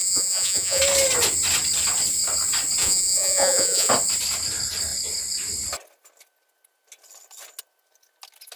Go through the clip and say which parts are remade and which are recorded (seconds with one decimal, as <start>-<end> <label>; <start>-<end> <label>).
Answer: 0.0-0.8 remade; 0.8-2.8 recorded; 2.8-3.9 remade; 3.9-8.6 recorded